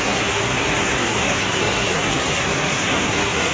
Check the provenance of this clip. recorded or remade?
remade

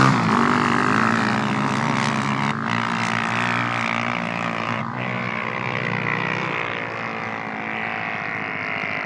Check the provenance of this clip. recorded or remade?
recorded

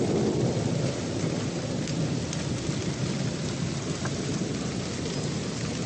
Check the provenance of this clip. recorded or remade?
recorded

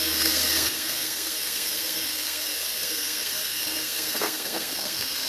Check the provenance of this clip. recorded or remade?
remade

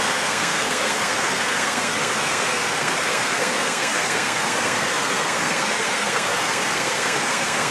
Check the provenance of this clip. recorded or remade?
remade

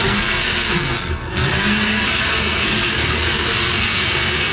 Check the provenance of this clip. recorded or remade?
remade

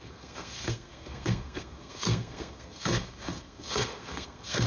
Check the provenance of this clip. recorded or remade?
remade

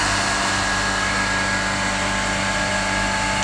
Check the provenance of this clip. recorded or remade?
recorded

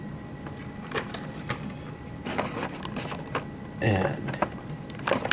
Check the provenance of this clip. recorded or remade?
recorded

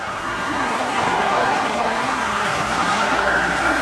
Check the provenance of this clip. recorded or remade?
remade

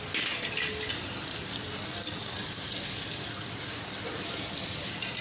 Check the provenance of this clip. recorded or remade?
recorded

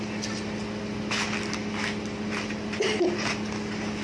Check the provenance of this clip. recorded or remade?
recorded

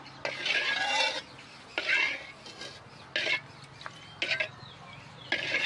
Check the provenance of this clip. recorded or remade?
recorded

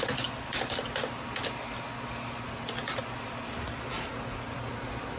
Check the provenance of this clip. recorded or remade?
recorded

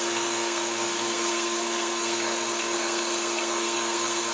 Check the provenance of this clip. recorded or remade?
remade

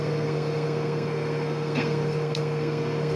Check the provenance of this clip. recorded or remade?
remade